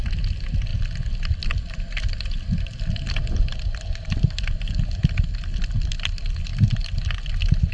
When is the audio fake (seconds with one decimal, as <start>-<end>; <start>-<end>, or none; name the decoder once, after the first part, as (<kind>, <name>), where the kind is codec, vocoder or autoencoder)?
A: none